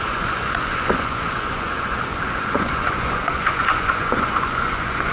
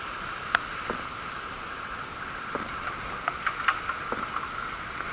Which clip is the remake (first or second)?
first